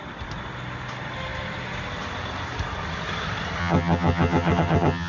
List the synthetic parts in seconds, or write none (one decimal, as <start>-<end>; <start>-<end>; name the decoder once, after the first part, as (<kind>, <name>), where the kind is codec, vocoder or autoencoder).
3.6-5.1 (vocoder, HiFi-GAN)